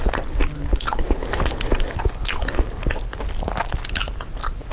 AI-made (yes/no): no